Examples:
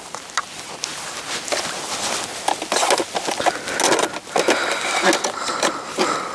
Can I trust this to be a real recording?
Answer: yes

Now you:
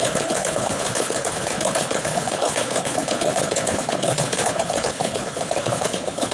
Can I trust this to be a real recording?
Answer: no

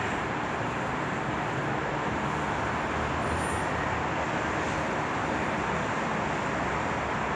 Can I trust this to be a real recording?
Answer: yes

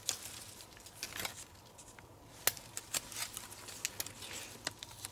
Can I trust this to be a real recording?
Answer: yes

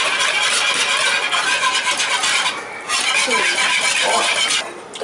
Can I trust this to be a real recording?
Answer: yes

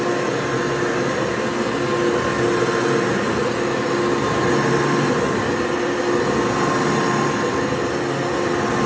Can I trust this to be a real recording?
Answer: yes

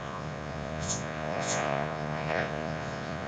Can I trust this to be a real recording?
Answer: no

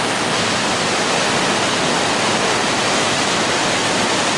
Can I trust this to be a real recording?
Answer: yes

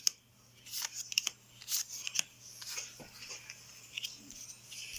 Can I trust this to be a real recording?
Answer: yes